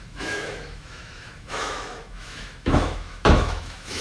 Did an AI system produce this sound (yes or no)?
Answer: yes